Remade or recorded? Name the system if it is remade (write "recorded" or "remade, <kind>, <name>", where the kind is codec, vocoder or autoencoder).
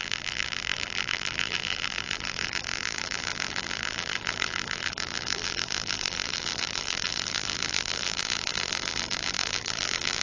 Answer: remade, vocoder, BigVGAN v2